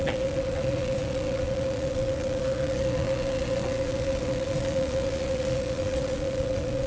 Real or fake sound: fake